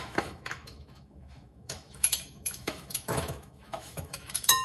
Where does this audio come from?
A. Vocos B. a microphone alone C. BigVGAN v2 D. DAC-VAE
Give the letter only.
D